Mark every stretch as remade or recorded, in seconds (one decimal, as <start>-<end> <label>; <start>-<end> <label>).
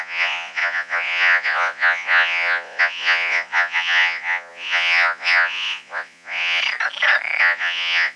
0.0-6.6 remade; 6.6-7.4 recorded; 7.4-8.2 remade